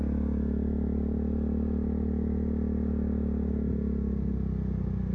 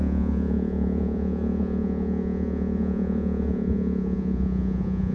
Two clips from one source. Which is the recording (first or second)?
first